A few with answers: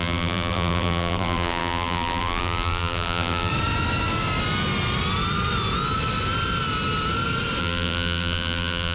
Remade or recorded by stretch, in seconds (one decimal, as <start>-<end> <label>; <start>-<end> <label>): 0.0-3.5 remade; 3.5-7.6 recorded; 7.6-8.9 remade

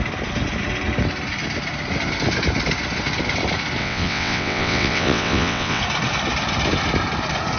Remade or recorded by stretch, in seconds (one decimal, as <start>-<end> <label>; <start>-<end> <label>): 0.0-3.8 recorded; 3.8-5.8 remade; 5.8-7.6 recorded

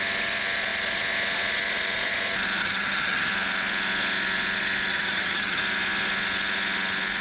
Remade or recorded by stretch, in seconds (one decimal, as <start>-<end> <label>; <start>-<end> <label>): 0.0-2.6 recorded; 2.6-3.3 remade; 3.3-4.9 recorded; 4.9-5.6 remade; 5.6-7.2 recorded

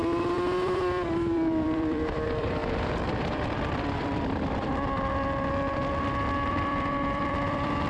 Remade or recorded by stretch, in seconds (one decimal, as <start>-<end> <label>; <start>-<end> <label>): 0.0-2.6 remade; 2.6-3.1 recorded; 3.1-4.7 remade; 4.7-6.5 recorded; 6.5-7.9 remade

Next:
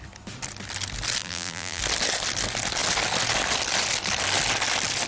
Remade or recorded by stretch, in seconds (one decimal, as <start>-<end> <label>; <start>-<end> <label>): 0.0-1.2 recorded; 1.2-1.8 remade; 1.8-5.1 recorded